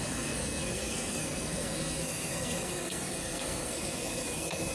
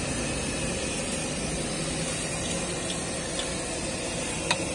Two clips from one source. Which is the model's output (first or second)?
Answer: first